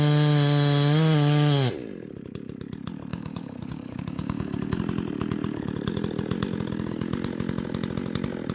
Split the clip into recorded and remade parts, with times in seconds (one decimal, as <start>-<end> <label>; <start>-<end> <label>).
0.0-3.1 recorded; 3.1-4.8 remade; 4.8-8.5 recorded